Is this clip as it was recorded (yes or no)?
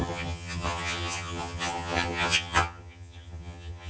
no